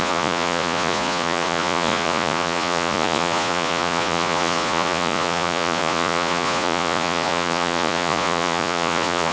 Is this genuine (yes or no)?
no